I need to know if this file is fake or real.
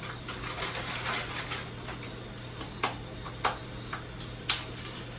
real